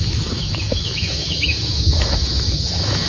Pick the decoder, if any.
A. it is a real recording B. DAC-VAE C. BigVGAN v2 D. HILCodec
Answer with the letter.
B